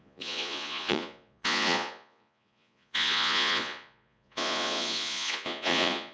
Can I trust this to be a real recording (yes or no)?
no